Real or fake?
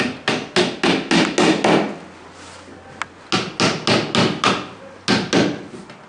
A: real